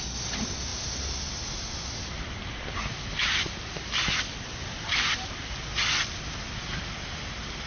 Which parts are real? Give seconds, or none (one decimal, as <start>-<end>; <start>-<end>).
0.0-7.7